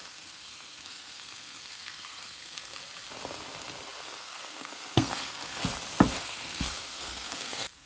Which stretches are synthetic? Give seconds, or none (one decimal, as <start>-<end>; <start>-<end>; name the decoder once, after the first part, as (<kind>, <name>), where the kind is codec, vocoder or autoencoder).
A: 0.0-2.8 (codec, SNAC); 4.0-5.6; 6.2-7.9